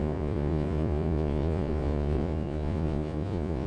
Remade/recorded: remade